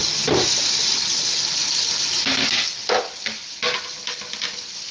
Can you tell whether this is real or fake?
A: real